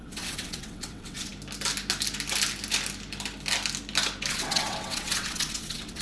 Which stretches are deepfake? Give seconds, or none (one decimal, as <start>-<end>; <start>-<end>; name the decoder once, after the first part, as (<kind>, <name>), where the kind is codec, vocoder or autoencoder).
0.0-1.3 (vocoder, WaveNeXt); 4.3-6.0